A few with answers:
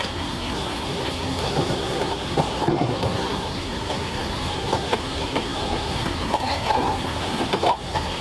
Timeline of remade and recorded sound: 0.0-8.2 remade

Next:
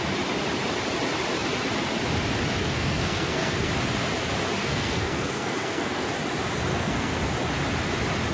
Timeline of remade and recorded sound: 0.0-2.6 recorded; 2.6-3.7 remade; 3.7-4.6 recorded; 4.6-6.1 remade; 6.1-6.7 recorded; 6.7-7.2 remade; 7.2-8.3 recorded

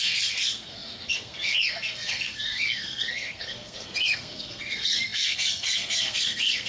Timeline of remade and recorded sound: 0.0-6.7 remade

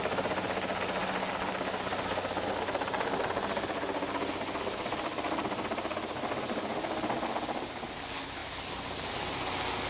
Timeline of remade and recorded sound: 0.0-9.9 recorded

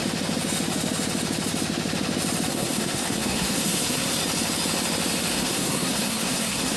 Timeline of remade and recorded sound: 0.0-2.5 recorded; 2.5-4.2 remade; 4.2-5.3 recorded; 5.3-6.8 remade